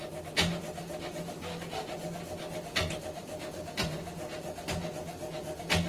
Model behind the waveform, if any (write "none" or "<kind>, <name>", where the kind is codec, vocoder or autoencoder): none